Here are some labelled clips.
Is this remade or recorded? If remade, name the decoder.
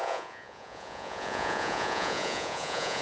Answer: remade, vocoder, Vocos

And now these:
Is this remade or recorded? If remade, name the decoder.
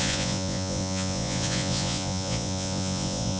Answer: remade, vocoder, Vocos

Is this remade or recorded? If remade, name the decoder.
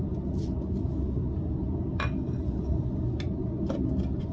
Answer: recorded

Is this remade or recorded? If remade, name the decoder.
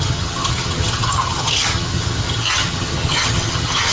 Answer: remade, vocoder, HiFi-GAN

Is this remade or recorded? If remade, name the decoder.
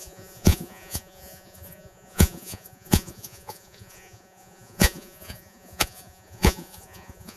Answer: remade, vocoder, Vocos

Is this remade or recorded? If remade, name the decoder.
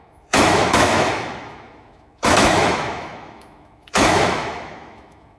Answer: remade, autoencoder, DAC-VAE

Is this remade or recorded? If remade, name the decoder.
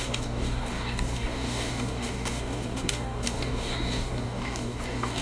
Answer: remade, codec, DAC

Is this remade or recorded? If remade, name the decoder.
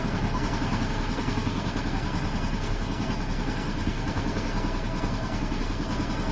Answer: remade, codec, SNAC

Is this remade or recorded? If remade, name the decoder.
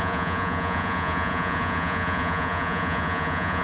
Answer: remade, vocoder, Vocos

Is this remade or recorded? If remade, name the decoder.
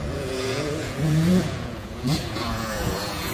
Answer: remade, vocoder, Vocos